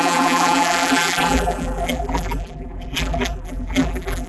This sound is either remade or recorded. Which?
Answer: remade